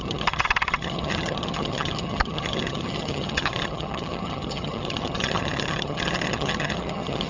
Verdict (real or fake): fake